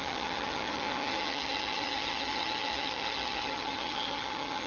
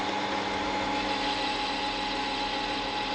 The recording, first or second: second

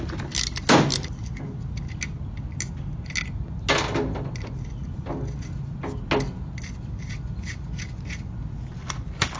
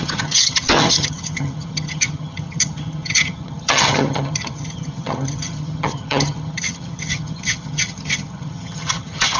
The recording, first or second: first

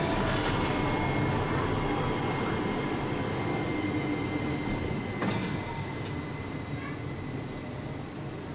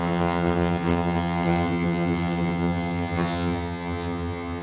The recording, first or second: first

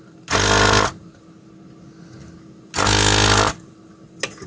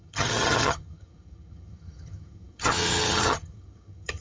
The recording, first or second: first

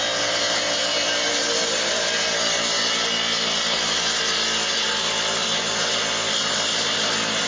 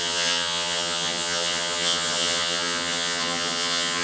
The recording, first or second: first